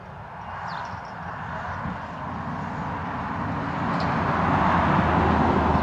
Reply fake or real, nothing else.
real